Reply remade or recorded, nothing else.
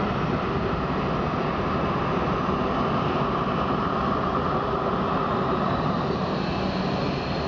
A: recorded